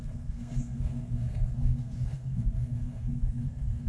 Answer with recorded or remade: remade